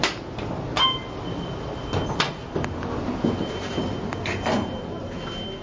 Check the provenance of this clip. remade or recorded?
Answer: recorded